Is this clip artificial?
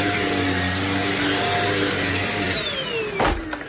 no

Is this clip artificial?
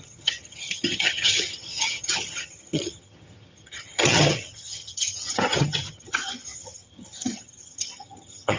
yes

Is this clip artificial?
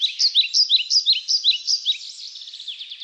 no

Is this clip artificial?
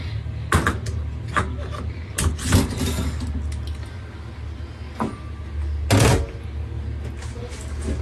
no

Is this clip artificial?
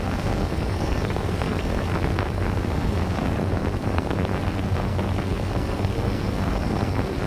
yes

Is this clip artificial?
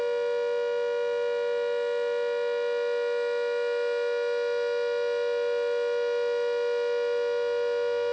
no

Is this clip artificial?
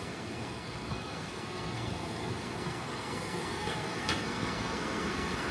yes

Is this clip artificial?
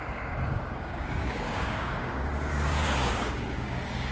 yes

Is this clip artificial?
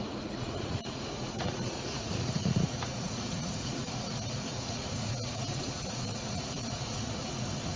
yes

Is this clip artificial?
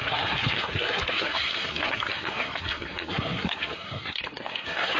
yes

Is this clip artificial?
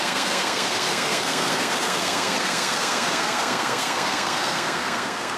yes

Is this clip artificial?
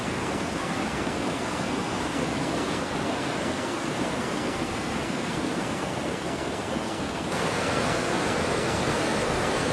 yes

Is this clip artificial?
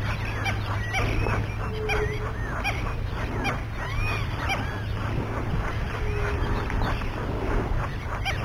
no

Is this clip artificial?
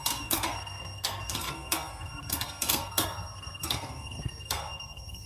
yes